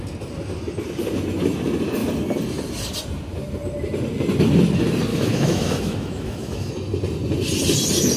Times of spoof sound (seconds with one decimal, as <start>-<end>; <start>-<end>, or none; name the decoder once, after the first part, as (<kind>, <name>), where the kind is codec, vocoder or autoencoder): 5.1-6.7 (autoencoder, DAC-VAE)